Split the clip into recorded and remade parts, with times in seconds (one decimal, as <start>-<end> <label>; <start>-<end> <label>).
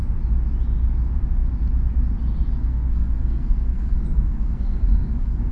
0.0-2.6 recorded; 2.6-5.5 remade